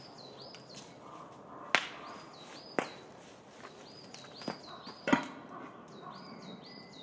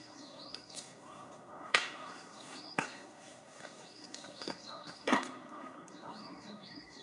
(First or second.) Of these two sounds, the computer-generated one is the second